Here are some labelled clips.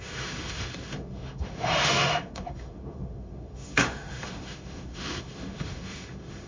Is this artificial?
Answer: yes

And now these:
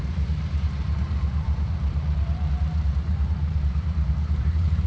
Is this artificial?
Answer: yes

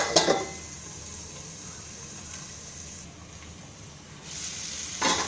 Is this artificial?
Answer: no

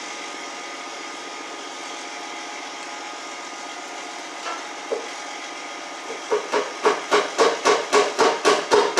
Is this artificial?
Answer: no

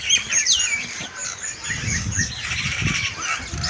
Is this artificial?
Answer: no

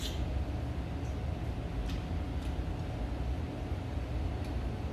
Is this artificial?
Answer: no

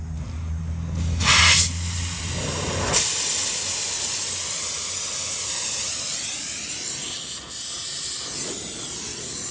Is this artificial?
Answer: no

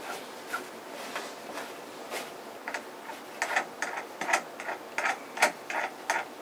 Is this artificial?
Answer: no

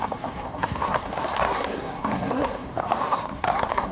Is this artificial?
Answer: yes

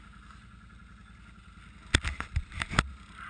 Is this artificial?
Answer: no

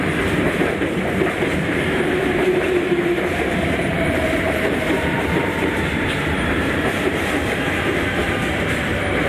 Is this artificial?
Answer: yes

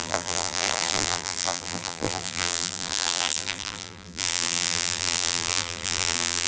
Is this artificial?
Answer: yes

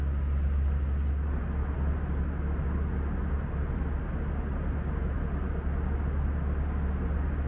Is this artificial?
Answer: no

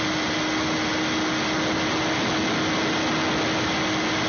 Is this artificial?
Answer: no